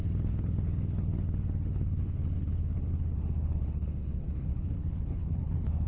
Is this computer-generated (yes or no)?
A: yes